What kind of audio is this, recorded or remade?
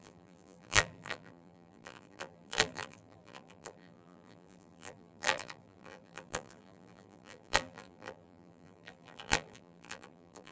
remade